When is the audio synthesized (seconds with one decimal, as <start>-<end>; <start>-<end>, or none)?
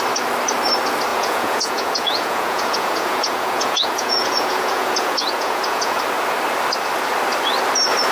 1.1-6.0